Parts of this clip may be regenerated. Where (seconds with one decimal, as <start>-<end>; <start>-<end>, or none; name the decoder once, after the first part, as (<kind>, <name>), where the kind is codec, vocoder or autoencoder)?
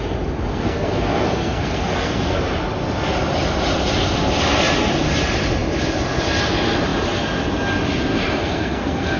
0.5-2.4 (codec, SNAC); 8.4-9.2